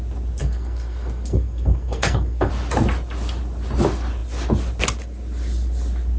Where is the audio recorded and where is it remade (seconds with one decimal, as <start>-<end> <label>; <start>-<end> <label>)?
0.0-0.4 recorded; 0.4-2.5 remade; 2.5-6.2 recorded